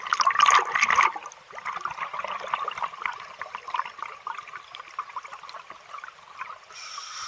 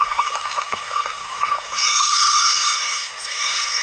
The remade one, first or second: second